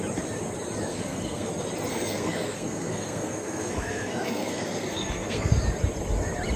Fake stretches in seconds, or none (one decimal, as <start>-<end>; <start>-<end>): 0.9-1.5; 1.9-5.5